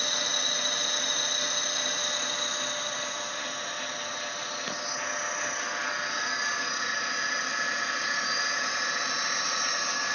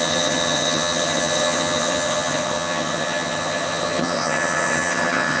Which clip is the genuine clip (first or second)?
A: first